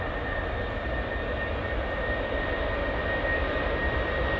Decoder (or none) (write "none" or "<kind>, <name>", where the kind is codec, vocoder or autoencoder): none